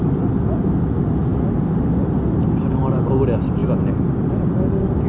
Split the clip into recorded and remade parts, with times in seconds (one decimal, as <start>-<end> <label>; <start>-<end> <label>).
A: 0.0-5.1 recorded